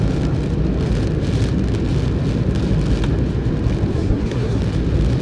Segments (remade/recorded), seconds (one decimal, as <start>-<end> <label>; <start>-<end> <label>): 0.0-3.9 recorded; 3.9-4.6 remade; 4.6-5.2 recorded